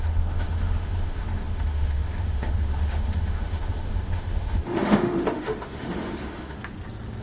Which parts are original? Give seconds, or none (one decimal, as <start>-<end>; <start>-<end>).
6.6-7.2